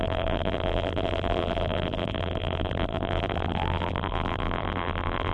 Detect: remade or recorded remade